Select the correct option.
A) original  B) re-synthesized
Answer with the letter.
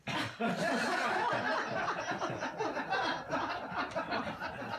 A